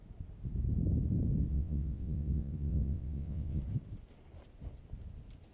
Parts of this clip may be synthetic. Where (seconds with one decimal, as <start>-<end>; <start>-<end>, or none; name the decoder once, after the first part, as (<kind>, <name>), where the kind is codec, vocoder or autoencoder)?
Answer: 1.5-3.6 (vocoder, WaveNeXt)